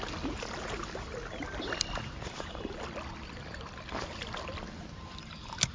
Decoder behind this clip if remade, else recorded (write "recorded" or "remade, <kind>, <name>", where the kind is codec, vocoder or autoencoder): recorded